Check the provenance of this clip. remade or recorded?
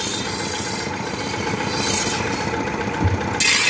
recorded